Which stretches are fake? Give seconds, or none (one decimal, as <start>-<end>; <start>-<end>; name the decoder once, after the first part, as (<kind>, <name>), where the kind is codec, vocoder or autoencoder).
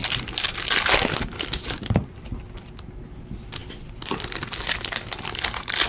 1.3-2.3 (vocoder, BigVGAN v2)